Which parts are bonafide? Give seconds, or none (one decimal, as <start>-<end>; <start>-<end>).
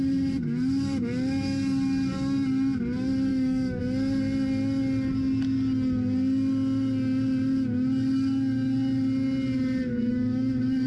0.0-3.3; 3.8-10.1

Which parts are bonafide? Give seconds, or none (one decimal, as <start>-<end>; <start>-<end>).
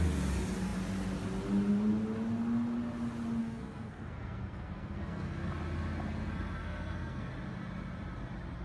0.0-3.4; 5.5-6.6; 7.3-8.6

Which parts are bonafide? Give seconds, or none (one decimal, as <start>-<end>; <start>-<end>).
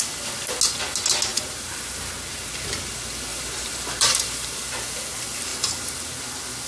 0.0-1.3; 2.0-3.3; 4.7-6.7